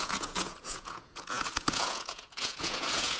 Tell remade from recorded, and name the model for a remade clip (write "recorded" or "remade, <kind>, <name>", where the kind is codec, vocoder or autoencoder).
remade, vocoder, Vocos